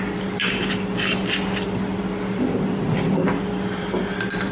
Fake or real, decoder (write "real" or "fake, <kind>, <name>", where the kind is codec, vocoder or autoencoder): real